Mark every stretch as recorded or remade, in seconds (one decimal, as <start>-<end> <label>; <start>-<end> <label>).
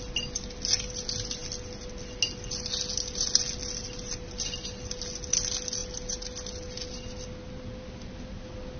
0.0-8.8 recorded